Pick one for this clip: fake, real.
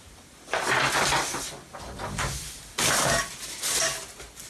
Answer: real